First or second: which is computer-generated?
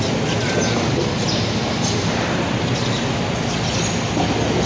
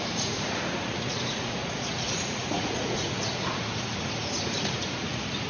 second